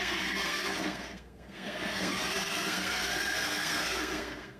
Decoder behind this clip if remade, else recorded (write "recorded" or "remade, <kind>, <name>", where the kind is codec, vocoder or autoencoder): remade, codec, SNAC